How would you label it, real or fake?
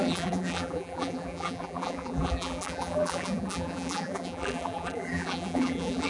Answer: fake